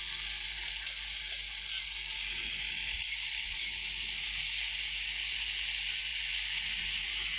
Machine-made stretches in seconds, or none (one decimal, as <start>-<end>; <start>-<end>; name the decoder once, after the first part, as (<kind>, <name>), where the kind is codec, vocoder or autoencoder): none